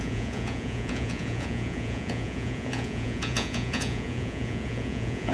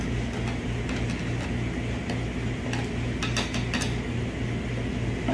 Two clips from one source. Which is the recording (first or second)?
second